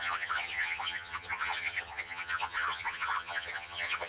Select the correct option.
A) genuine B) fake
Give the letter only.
B